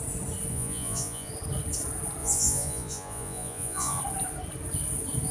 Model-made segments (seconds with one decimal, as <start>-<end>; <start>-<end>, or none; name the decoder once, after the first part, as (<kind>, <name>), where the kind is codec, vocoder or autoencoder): 0.5-1.3 (vocoder, Vocos); 2.2-4.0